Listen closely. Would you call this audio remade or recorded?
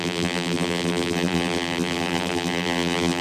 remade